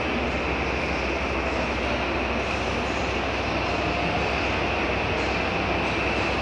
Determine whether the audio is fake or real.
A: real